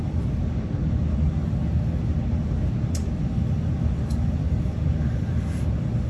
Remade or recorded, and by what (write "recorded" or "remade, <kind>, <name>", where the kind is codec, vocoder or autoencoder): recorded